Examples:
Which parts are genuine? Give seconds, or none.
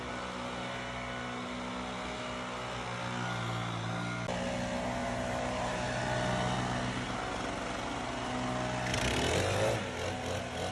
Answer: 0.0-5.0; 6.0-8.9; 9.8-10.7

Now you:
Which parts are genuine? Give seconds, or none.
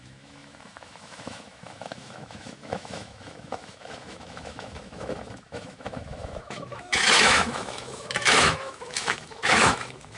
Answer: none